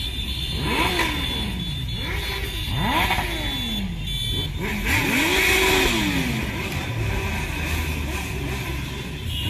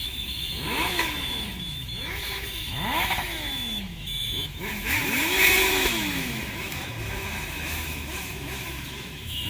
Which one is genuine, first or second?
first